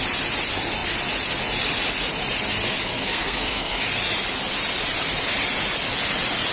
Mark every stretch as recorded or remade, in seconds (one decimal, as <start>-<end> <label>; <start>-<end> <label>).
0.0-3.0 recorded; 3.0-3.8 remade; 3.8-6.5 recorded